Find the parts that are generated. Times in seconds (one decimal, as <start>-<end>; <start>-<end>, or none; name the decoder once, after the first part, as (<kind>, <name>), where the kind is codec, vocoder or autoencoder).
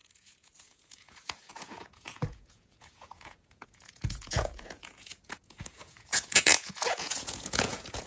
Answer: 0.0-8.1 (vocoder, Vocos)